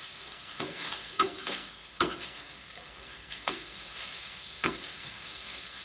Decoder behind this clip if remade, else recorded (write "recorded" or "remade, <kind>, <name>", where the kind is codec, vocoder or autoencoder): remade, codec, SNAC